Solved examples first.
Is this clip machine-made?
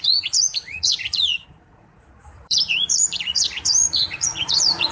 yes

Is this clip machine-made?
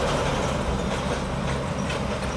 no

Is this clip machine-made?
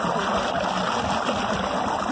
no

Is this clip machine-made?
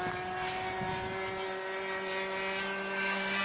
no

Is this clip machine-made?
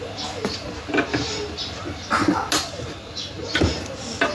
no